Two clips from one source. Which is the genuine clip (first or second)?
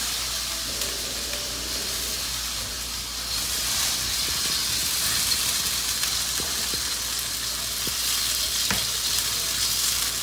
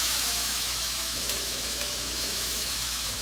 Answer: first